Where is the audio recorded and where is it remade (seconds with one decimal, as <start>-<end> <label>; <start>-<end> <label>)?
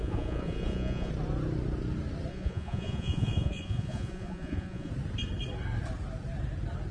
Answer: 0.0-1.1 remade; 1.1-2.3 recorded; 2.3-4.9 remade; 4.9-6.9 recorded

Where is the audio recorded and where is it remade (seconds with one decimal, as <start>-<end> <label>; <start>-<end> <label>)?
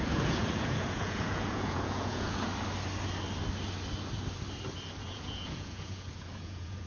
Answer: 0.0-2.5 remade; 2.5-5.0 recorded; 5.0-6.9 remade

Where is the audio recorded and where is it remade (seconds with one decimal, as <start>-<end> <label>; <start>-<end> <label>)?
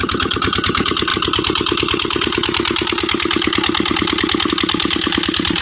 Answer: 0.0-5.6 recorded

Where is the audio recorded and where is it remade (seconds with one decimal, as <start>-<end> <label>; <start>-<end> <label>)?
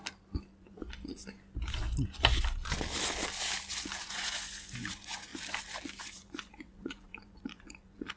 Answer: 0.0-0.6 recorded; 0.6-1.2 remade; 1.2-4.0 recorded; 4.0-5.3 remade; 5.3-6.0 recorded; 6.0-8.2 remade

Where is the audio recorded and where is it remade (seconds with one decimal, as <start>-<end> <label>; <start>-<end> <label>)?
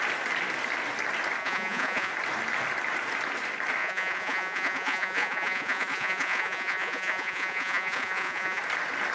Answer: 0.0-1.4 recorded; 1.4-2.1 remade; 2.1-3.8 recorded; 3.8-8.6 remade; 8.6-9.1 recorded